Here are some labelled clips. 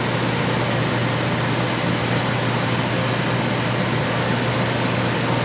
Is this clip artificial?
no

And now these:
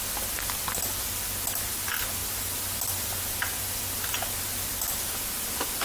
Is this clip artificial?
no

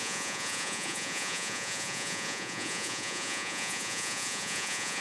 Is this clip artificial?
yes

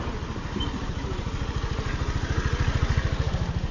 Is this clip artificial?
no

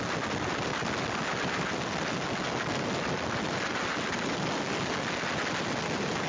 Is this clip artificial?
no